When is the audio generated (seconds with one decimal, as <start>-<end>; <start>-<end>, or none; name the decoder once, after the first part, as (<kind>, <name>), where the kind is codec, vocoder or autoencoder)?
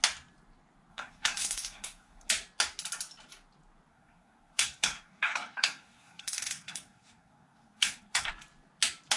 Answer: 0.9-2.3 (codec, SNAC); 3.9-8.3